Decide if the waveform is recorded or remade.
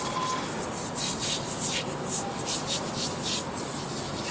recorded